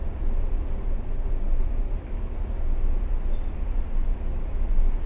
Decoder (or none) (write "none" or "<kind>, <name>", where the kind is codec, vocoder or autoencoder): none